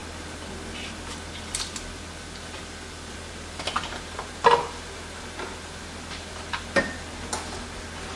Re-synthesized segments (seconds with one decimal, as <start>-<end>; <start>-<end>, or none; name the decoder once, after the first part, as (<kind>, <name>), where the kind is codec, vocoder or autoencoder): none